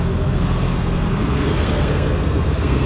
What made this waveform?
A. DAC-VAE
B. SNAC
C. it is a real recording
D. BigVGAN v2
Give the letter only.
B